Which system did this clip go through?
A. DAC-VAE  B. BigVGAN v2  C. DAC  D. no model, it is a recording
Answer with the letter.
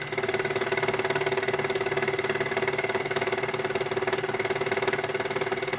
D